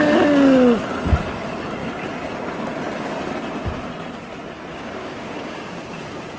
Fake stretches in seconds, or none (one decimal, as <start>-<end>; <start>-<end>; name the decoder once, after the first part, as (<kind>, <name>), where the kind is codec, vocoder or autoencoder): 4.7-5.8 (codec, DAC)